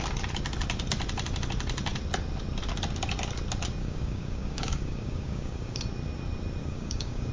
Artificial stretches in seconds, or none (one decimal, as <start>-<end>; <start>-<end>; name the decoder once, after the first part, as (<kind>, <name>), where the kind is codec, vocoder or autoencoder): 3.8-5.8 (codec, DAC); 6.6-7.3